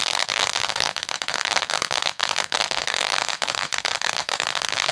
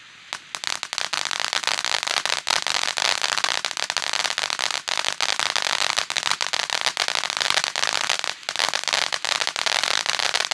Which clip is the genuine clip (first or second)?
second